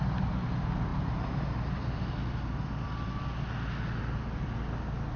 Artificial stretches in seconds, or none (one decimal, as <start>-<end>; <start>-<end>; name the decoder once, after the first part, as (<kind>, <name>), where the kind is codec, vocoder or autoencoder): none

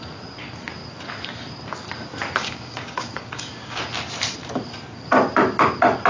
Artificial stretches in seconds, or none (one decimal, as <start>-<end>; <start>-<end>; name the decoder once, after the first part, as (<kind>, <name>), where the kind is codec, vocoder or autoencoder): 2.4-3.8 (codec, DAC)

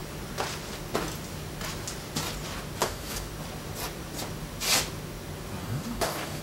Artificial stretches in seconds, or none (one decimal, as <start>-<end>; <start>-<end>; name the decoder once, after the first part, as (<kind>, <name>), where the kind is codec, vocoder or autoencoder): 2.8-3.3 (codec, DAC); 5.6-6.4